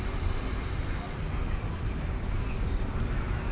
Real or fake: real